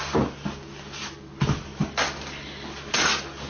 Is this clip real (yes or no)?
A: yes